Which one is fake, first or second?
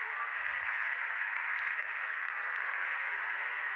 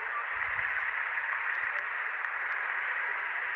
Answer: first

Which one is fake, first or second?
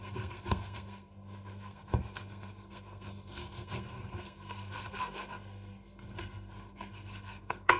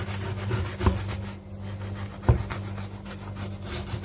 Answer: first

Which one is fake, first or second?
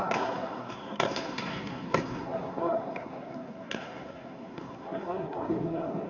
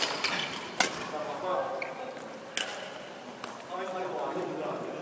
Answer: first